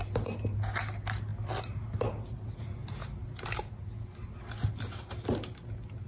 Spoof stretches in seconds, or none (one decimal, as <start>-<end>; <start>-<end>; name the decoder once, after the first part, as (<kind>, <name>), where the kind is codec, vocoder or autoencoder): none